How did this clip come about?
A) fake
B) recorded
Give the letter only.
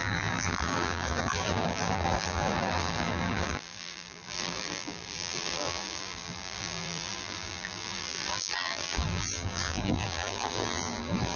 A